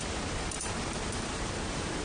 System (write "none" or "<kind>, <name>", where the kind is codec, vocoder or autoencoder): vocoder, BigVGAN v2